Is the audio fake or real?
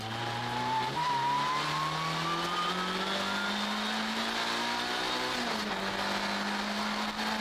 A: real